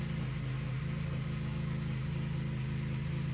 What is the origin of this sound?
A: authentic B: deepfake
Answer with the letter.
A